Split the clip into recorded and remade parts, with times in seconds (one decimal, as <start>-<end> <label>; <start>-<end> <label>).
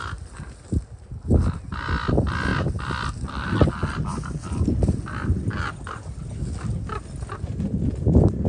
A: 0.0-8.5 recorded